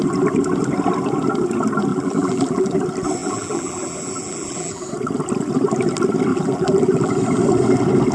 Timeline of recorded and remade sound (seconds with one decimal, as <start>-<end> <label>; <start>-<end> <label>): 0.0-1.9 recorded; 1.9-2.8 remade; 2.8-3.2 recorded; 3.2-4.8 remade; 4.8-6.3 recorded; 6.3-7.1 remade; 7.1-8.1 recorded